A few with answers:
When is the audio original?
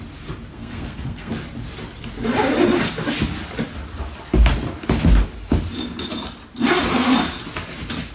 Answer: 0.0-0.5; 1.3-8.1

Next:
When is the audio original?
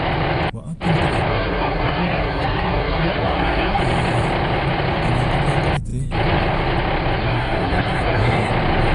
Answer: 0.0-1.3; 3.8-7.2; 8.5-8.9